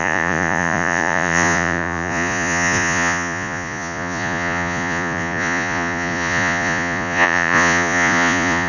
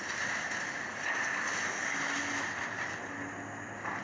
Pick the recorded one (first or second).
second